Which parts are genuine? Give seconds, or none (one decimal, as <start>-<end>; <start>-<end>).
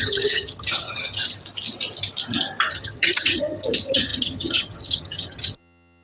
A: 1.2-2.7